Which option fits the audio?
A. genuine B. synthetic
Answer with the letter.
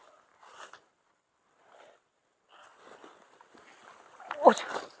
A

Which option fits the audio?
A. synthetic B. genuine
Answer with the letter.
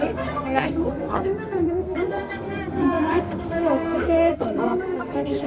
A